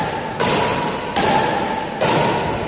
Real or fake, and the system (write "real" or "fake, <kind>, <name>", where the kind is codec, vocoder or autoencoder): real